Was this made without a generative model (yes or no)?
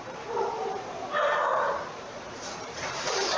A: no